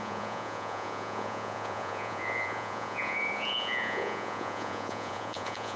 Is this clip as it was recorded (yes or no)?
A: no